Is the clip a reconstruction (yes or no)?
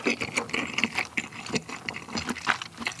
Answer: yes